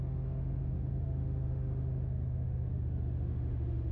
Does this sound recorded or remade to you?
remade